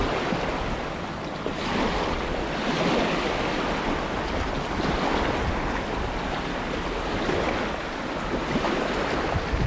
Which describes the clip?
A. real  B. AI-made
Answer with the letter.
A